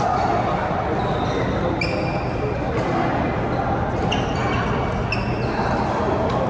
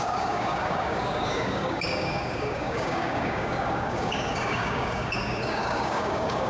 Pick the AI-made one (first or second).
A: second